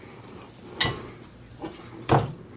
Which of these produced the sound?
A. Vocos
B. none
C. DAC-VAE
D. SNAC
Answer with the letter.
B